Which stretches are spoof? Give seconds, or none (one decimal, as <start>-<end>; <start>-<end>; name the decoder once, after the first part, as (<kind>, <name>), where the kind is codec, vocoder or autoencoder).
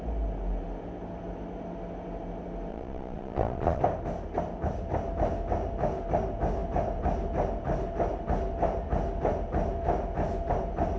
2.7-3.8 (vocoder, Vocos)